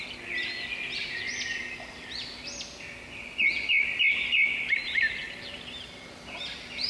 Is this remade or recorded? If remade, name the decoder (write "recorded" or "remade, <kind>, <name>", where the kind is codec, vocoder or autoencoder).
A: recorded